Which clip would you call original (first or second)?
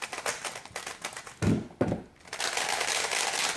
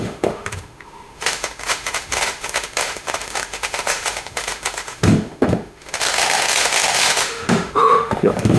first